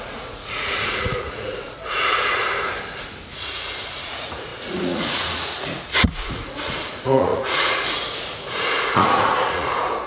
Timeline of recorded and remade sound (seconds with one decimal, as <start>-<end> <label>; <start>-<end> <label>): 0.0-2.4 remade; 2.4-3.3 recorded; 3.3-10.1 remade